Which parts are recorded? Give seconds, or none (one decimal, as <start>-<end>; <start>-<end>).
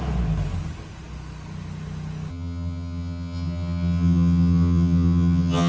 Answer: 0.0-2.3